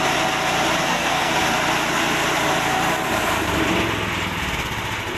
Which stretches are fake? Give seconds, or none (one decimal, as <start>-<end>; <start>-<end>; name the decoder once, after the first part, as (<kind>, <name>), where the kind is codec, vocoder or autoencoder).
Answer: 0.8-1.3 (codec, SNAC)